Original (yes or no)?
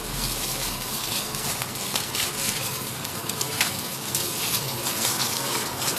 no